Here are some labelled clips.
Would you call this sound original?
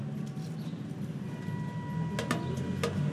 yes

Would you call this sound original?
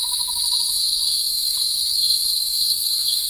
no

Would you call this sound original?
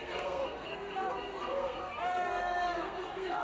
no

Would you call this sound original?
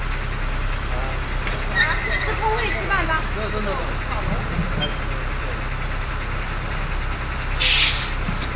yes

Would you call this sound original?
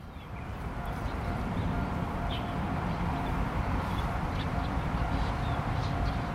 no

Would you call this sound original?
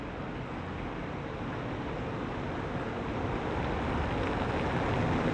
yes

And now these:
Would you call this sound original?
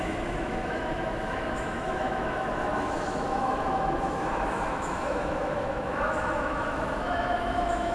no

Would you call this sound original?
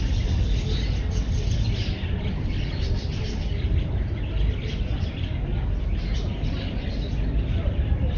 yes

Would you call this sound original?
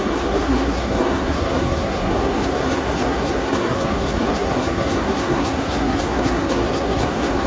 no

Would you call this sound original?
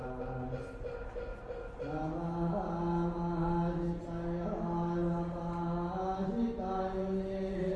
yes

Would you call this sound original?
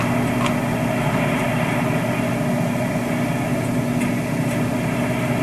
yes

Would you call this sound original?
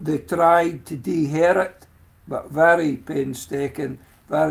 yes